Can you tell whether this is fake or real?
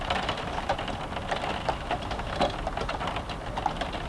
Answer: real